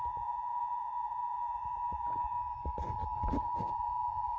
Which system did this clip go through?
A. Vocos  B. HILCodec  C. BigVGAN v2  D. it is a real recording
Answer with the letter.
A